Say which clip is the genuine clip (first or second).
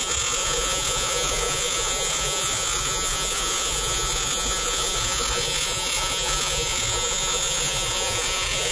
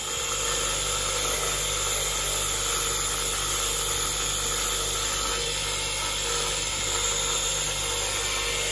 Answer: second